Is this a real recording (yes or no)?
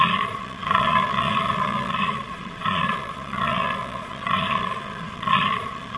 no